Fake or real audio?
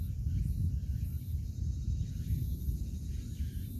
real